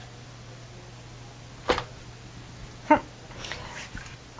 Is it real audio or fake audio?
real